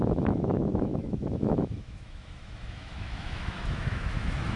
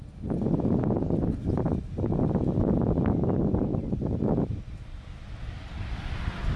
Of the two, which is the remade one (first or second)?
first